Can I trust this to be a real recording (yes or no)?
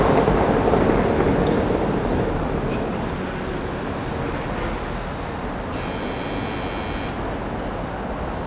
yes